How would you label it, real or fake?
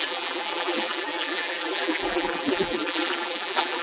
fake